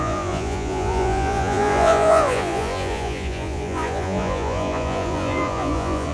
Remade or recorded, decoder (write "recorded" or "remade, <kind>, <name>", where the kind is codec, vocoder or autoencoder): remade, vocoder, Vocos